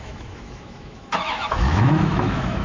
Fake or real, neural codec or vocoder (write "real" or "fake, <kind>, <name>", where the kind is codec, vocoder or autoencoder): fake, autoencoder, DAC-VAE